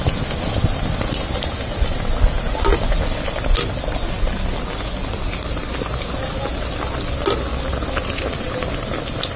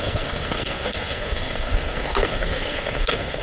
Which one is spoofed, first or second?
second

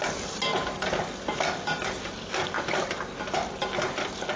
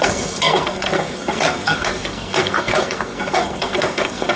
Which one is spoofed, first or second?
second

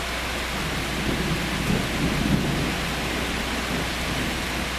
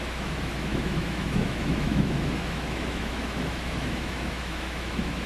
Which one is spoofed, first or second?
second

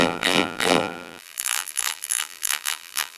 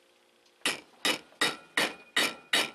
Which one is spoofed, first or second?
first